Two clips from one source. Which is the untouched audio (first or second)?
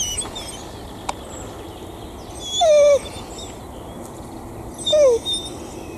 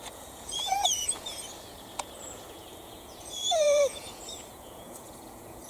first